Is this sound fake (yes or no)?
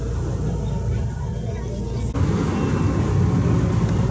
no